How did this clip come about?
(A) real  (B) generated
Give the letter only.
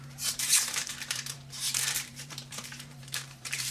B